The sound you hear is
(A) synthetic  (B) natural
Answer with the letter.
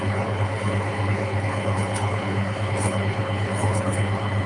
A